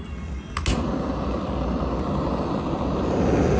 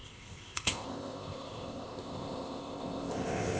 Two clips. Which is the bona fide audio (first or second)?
first